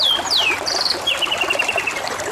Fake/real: real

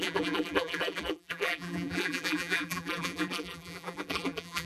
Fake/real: fake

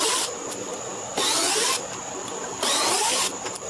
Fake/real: real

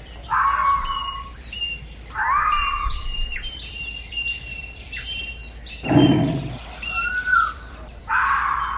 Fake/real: fake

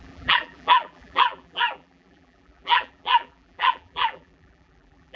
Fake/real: fake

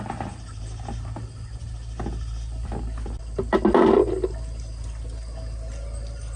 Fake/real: real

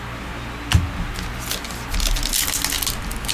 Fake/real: real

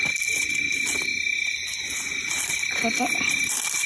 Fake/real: real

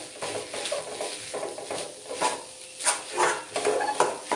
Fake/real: real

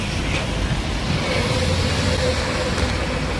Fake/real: real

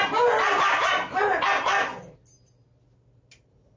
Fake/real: real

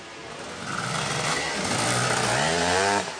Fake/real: real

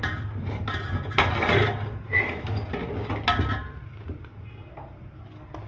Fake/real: real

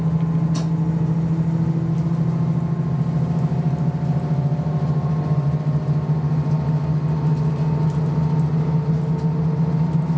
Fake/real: real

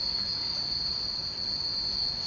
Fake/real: real